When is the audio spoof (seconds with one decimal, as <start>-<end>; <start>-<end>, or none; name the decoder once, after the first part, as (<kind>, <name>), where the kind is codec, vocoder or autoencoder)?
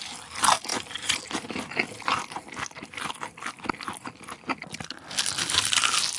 none